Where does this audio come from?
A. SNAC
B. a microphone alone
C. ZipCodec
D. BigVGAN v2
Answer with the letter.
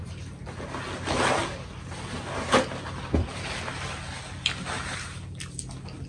B